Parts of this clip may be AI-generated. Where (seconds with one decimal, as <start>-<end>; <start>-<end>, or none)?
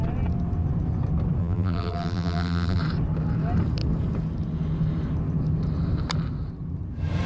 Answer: 1.4-2.8